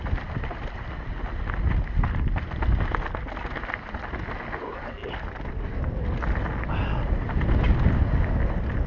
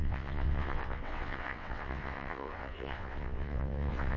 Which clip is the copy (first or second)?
second